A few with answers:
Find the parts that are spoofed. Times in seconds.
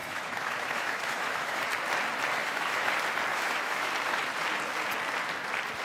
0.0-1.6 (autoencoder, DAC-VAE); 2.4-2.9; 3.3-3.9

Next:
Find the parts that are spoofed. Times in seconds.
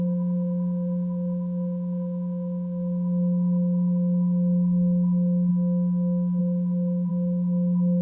0.0-5.5 (autoencoder, DAC-VAE); 6.4-8.0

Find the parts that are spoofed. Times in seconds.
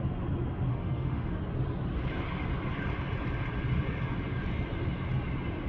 0.7-1.4 (autoencoder, DAC-VAE)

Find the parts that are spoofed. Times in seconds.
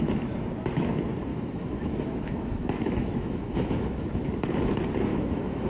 1.3-4.2 (autoencoder, DAC-VAE); 5.1-5.7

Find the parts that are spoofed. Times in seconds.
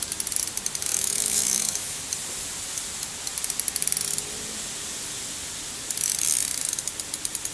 0.9-2.0 (autoencoder, DAC-VAE)